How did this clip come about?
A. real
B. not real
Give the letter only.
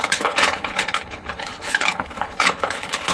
B